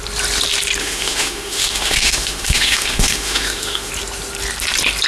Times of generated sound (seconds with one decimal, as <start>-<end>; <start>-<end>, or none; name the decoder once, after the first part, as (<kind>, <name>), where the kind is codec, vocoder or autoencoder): 0.8-3.9 (autoencoder, DAC-VAE)